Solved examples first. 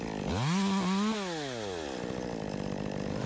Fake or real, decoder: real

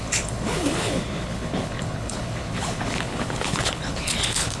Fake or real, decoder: fake, codec, HILCodec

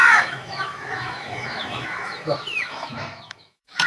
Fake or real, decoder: fake, autoencoder, DAC-VAE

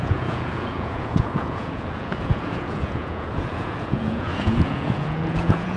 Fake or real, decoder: fake, vocoder, Vocos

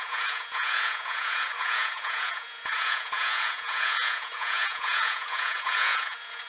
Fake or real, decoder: fake, vocoder, Vocos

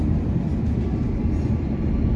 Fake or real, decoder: real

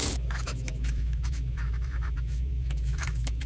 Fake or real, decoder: fake, autoencoder, DAC-VAE